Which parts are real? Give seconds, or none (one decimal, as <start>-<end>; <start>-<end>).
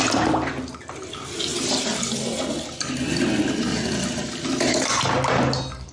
0.0-5.9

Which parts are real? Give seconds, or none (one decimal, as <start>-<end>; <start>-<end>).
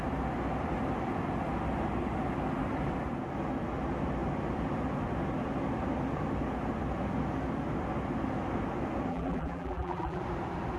0.0-9.1; 10.2-10.8